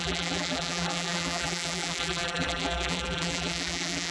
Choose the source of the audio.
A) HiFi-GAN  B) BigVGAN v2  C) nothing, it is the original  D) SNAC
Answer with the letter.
B